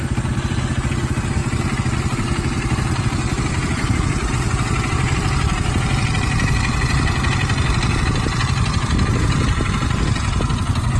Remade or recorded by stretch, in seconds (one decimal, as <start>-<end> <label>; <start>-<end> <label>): 0.0-11.0 recorded